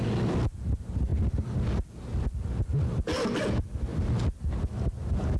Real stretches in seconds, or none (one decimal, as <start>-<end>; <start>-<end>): 0.0-5.4